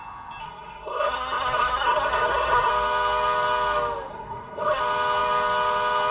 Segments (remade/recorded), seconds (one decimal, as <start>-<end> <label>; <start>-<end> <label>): 0.0-0.4 recorded; 0.4-2.7 remade; 2.7-4.1 recorded; 4.1-4.8 remade; 4.8-6.1 recorded